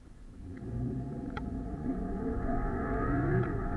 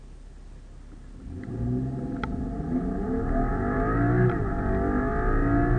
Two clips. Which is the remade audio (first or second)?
first